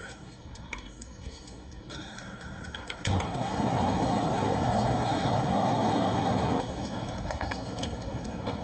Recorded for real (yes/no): no